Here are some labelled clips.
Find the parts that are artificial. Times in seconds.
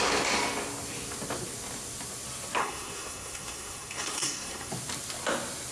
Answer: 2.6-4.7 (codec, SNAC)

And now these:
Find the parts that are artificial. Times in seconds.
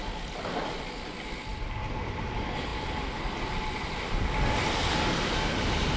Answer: none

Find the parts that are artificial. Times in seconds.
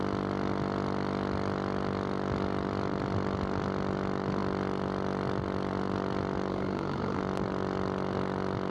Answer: 6.5-7.2 (codec, SNAC)